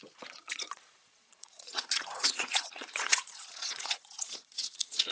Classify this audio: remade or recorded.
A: remade